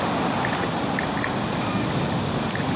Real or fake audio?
real